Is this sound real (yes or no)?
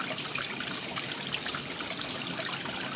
yes